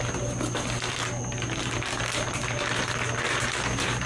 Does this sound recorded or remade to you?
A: recorded